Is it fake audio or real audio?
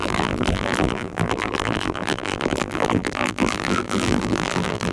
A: fake